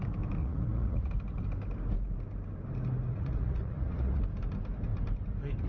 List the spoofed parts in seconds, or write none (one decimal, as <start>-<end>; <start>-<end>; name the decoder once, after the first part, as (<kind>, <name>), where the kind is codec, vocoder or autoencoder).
0.4-1.1 (vocoder, Vocos); 3.1-4.2